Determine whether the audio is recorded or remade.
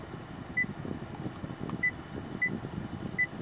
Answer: recorded